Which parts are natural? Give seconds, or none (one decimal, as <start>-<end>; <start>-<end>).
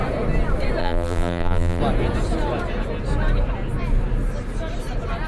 0.0-0.8; 1.8-5.3